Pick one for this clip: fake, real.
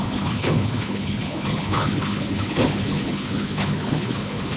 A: fake